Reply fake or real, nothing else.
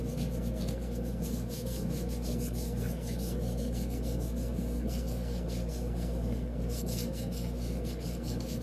fake